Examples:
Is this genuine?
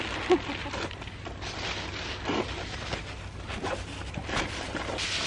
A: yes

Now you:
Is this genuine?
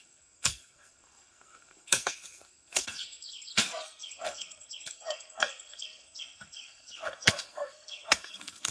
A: no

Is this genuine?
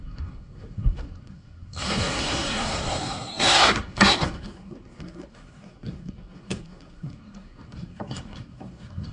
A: no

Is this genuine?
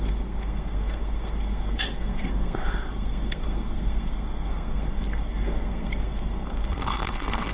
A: no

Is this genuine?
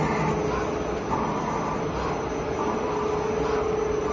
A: yes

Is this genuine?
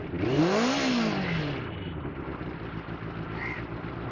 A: yes